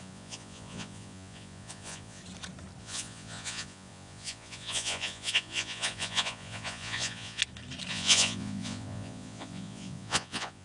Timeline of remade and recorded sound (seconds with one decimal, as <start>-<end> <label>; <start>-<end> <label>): 0.0-2.2 remade; 2.2-2.8 recorded; 2.8-7.4 remade; 7.4-7.9 recorded; 7.9-10.6 remade